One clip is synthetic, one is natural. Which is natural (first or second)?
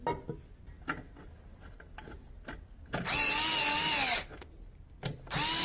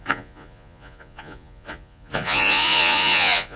first